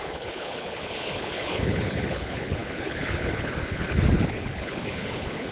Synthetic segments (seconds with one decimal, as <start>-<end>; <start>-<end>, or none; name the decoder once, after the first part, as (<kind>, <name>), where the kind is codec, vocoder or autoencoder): 0.0-5.5 (codec, HILCodec)